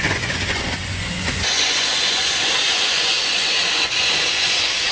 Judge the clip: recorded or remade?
remade